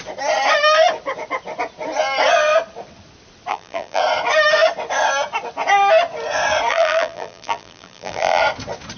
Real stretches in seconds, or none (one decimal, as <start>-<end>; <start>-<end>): 0.0-3.5; 4.0-6.7; 8.4-9.0